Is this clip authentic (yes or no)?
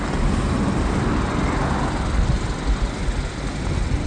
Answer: yes